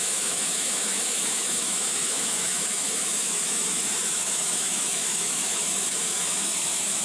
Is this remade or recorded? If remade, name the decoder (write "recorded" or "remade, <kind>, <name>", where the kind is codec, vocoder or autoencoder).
remade, autoencoder, DAC-VAE